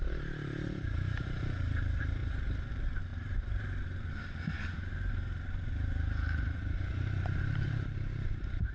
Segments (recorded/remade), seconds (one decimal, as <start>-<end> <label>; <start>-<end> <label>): 0.0-2.2 remade; 2.2-2.7 recorded; 2.7-8.7 remade